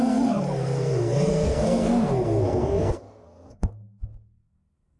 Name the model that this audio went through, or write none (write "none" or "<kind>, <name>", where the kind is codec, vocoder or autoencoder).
codec, SNAC